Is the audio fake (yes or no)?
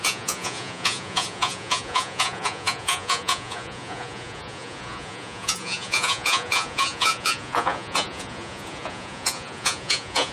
yes